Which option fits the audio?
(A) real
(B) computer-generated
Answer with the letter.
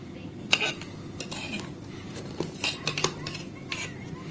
A